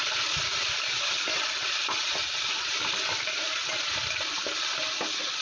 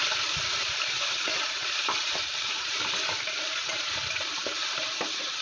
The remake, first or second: second